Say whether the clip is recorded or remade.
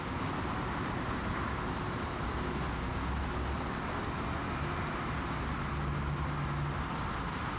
recorded